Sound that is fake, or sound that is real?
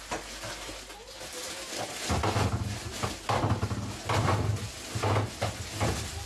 real